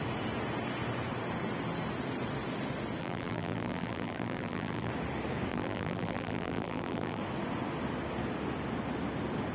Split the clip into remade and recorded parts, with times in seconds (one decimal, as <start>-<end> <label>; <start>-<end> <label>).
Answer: 0.0-3.0 recorded; 3.0-4.9 remade; 4.9-5.5 recorded; 5.5-7.2 remade; 7.2-9.5 recorded